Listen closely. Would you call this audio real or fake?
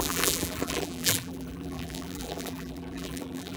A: fake